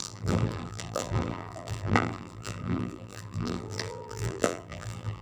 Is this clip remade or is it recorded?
remade